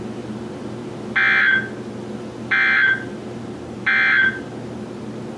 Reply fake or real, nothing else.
real